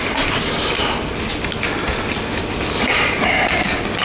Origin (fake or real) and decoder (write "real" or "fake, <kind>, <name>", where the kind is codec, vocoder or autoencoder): real